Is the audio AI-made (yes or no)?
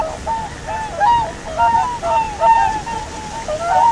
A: no